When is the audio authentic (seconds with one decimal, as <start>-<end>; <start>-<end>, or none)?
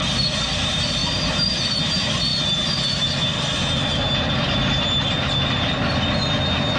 0.0-6.8